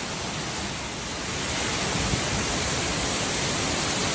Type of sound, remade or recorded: recorded